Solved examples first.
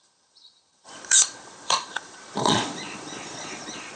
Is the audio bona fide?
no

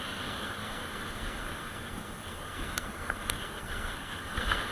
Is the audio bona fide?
no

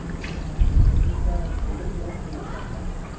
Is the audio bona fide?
yes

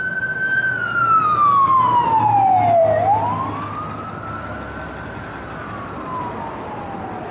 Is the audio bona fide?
yes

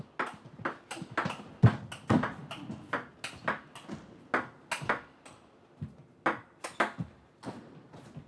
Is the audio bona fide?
yes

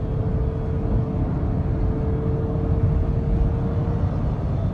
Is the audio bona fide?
yes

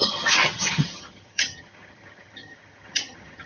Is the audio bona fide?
no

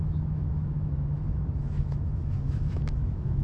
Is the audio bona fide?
no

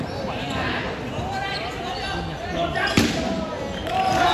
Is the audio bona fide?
yes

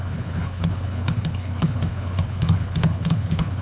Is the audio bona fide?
no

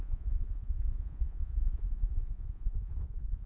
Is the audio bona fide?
no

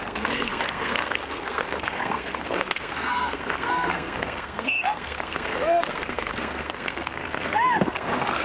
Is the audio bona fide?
no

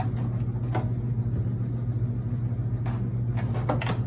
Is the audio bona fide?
yes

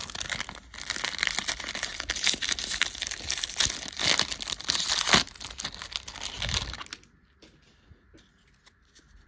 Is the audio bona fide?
yes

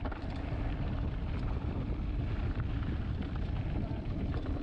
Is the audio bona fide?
no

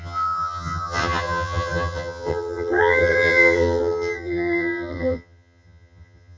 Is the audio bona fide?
no